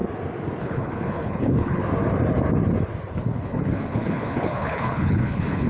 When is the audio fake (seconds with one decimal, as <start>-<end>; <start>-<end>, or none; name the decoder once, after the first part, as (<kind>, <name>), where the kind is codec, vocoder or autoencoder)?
0.6-1.8 (codec, HILCodec); 3.1-5.7